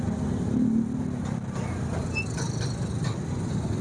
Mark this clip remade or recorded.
recorded